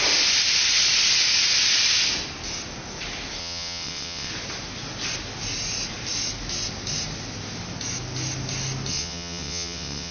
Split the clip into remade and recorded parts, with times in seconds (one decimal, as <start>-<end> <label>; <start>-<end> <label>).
0.0-3.4 recorded; 3.4-4.3 remade; 4.3-8.9 recorded; 8.9-10.1 remade

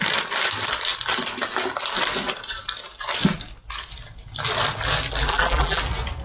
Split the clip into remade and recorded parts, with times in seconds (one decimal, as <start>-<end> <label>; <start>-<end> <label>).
0.0-5.3 recorded; 5.3-5.8 remade; 5.8-6.2 recorded

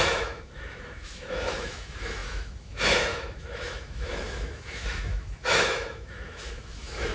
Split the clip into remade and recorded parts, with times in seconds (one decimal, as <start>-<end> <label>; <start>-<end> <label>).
0.0-7.1 remade